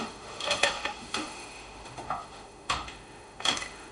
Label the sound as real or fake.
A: fake